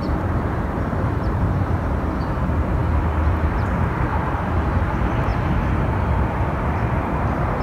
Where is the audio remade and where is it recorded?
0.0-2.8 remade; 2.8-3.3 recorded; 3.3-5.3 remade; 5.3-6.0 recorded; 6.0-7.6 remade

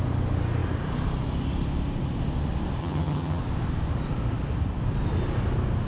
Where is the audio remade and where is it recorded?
0.0-2.8 recorded; 2.8-3.4 remade; 3.4-5.9 recorded

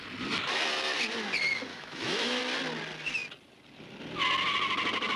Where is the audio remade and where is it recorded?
0.0-1.7 recorded; 1.7-2.4 remade; 2.4-5.2 recorded

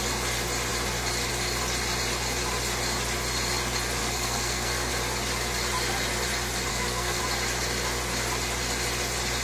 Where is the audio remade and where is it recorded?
0.0-4.0 recorded; 4.0-4.9 remade; 4.9-6.7 recorded; 6.7-7.2 remade; 7.2-9.4 recorded

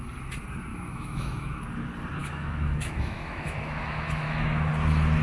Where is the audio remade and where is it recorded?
0.0-0.7 recorded; 0.7-1.6 remade; 1.6-2.2 recorded; 2.2-4.7 remade; 4.7-5.2 recorded